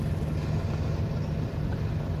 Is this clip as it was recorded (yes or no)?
yes